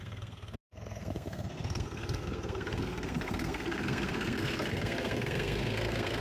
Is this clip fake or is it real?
fake